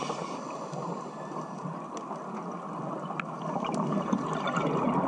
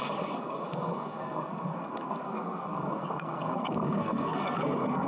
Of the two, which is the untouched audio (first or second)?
first